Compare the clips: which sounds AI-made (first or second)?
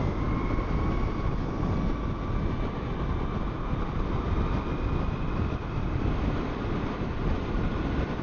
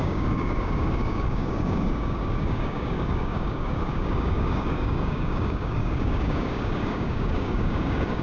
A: second